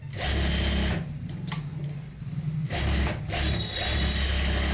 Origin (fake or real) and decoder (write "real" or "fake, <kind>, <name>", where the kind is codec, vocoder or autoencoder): real